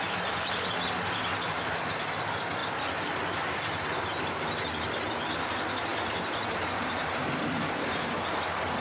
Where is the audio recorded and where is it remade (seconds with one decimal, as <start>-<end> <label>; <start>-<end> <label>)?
0.0-8.8 recorded